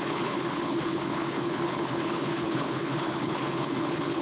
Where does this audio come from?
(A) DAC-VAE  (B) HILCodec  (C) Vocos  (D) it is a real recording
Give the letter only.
B